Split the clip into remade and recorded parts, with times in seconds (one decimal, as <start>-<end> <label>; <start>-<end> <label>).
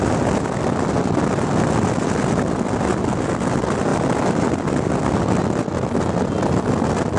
0.0-7.2 recorded